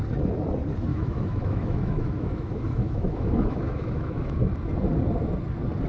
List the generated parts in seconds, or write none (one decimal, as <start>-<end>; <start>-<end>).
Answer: 0.9-4.4